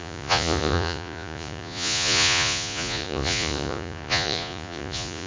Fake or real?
fake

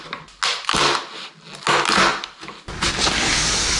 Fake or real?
real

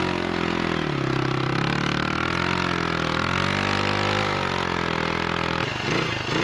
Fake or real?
real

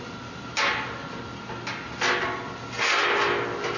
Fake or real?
real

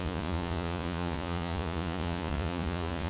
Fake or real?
fake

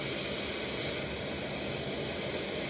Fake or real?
real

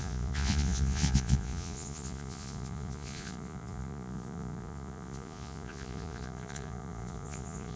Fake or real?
fake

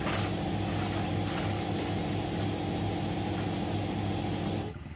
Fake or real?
real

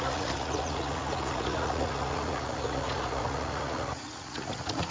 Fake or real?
fake